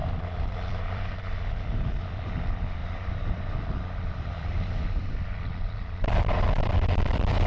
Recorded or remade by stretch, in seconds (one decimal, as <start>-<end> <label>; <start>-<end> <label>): 0.0-2.3 remade; 2.3-2.8 recorded; 2.8-7.5 remade